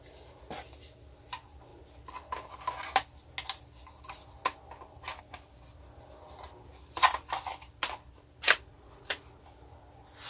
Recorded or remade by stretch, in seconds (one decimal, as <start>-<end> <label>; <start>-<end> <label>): 0.0-8.7 recorded; 8.7-9.2 remade; 9.2-10.3 recorded